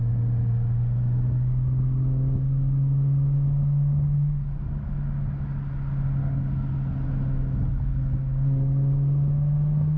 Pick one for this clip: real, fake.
real